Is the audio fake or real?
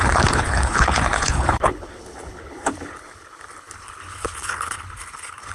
fake